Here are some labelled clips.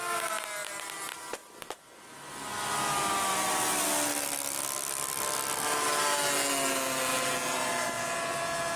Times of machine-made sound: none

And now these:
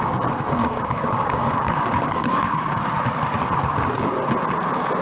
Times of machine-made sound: 0.6-2.8

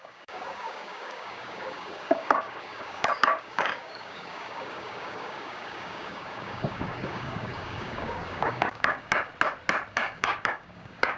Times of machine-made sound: 0.0-9.3; 9.9-11.2